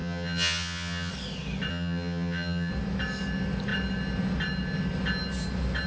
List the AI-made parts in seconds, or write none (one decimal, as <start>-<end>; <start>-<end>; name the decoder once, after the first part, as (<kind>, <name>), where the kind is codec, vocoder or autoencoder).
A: 0.0-1.1 (vocoder, HiFi-GAN); 1.7-2.7